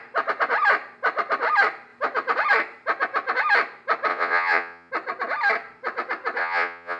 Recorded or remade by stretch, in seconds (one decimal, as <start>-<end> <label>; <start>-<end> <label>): 0.0-4.1 recorded; 4.1-4.9 remade; 4.9-6.4 recorded; 6.4-7.0 remade